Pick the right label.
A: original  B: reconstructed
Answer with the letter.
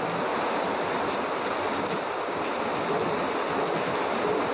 A